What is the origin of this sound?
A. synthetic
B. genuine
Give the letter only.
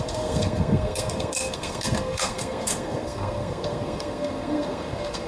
A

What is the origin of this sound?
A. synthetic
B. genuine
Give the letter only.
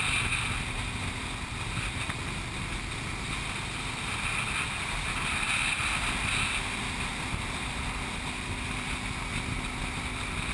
B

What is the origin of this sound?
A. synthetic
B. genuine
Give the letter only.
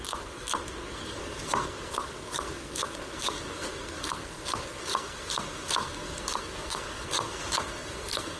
A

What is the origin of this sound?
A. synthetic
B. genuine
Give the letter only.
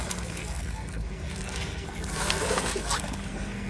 A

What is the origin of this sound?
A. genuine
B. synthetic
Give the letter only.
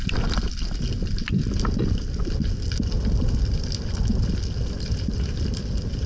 A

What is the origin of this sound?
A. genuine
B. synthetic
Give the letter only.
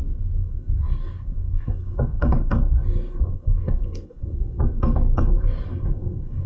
B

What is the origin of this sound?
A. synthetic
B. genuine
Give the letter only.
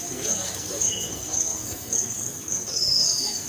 A